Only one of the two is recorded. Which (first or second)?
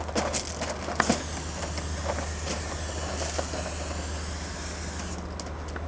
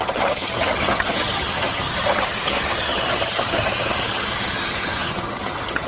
first